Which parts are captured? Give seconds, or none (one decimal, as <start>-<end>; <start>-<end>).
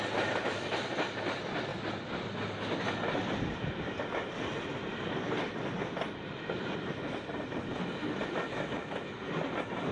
0.0-9.9